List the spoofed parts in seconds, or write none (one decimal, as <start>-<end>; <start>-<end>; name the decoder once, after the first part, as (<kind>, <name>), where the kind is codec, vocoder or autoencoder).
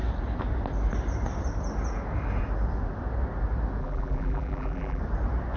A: 3.8-5.0 (vocoder, BigVGAN v2)